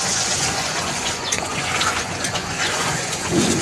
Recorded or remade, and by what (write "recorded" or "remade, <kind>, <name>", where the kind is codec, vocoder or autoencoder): remade, vocoder, Vocos